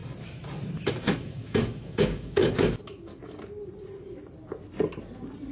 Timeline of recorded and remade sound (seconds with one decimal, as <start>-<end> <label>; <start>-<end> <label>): 0.0-0.8 recorded; 0.8-3.1 remade; 3.1-5.5 recorded